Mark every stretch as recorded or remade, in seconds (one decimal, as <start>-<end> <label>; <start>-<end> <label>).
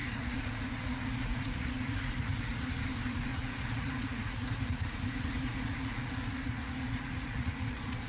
0.0-2.8 remade; 2.8-3.3 recorded; 3.3-8.1 remade